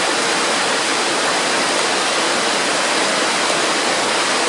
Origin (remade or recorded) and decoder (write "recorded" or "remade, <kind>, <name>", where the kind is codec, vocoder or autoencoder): recorded